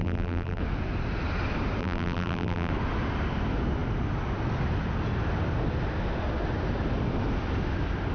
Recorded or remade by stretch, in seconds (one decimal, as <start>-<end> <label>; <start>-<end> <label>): 0.0-0.6 remade; 0.6-1.8 recorded; 1.8-2.7 remade; 2.7-8.1 recorded